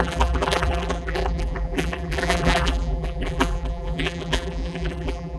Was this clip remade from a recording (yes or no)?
yes